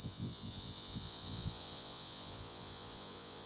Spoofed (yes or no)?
yes